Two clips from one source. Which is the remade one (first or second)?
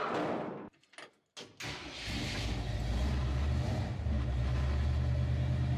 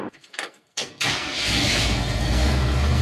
second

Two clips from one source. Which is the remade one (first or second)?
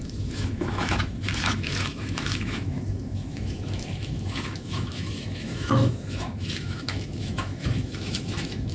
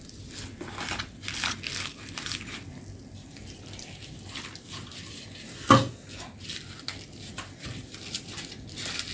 first